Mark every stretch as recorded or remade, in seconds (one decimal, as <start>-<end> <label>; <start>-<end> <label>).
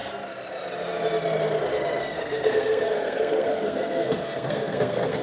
0.0-2.0 recorded; 2.0-5.2 remade